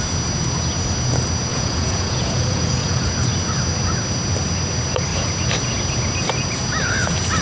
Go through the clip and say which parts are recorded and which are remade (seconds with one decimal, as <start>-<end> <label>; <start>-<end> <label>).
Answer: 0.0-1.5 recorded; 1.5-3.1 remade; 3.1-7.4 recorded